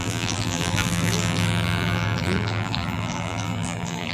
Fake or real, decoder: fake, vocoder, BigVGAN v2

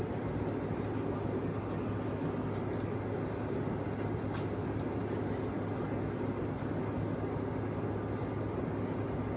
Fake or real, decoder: real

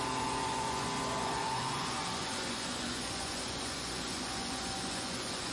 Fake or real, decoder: fake, vocoder, Vocos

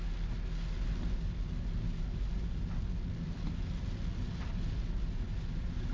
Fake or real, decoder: real